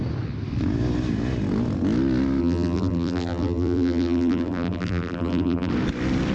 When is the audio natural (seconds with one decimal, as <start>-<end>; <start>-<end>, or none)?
0.0-2.4; 5.7-6.3